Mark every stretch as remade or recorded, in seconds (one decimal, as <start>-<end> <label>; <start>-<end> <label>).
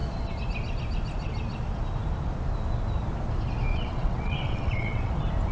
0.0-3.7 recorded; 3.7-5.1 remade; 5.1-5.5 recorded